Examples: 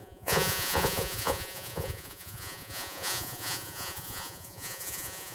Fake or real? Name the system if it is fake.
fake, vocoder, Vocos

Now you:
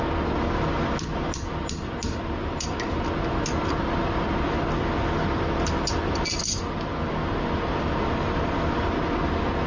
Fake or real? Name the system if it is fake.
real